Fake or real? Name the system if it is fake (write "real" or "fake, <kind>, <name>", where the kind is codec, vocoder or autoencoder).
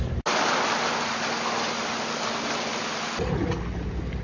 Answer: real